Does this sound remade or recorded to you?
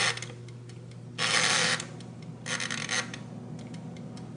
recorded